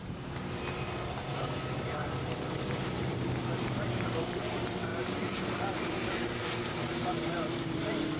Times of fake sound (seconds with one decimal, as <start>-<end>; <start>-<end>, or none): 0.0-8.2